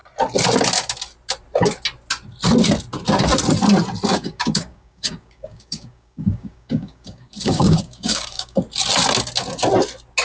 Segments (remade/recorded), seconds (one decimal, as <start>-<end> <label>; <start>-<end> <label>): 0.0-4.1 recorded; 4.1-8.6 remade; 8.6-10.2 recorded